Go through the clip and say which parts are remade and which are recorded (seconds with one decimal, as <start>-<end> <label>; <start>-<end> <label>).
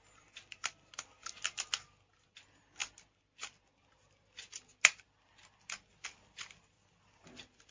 0.0-7.7 recorded